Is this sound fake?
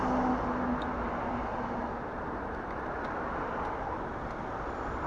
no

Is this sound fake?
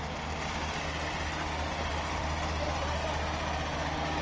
yes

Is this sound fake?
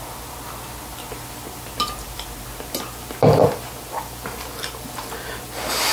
no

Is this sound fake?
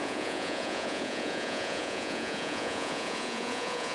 yes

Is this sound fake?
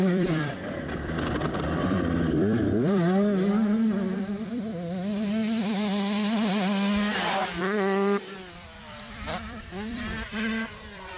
yes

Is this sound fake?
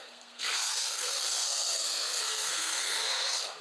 yes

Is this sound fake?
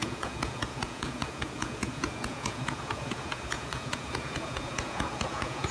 yes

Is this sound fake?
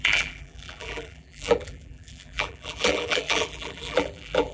yes